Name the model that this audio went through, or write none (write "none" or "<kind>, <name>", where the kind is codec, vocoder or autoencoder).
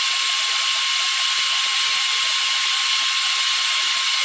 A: none